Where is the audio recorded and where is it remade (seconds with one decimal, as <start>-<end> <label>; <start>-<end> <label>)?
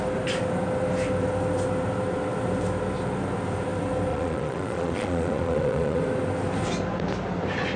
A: 0.0-4.1 recorded; 4.1-6.0 remade; 6.0-7.8 recorded